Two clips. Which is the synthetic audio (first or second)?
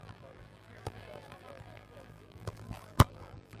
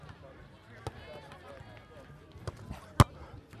first